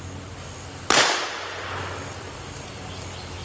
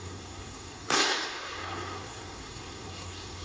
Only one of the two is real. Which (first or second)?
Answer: first